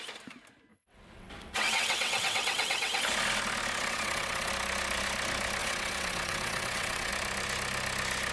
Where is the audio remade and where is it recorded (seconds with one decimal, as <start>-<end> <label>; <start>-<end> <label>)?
0.0-0.7 recorded; 0.7-3.0 remade; 3.0-3.8 recorded; 3.8-4.5 remade; 4.5-5.6 recorded; 5.6-7.1 remade; 7.1-8.3 recorded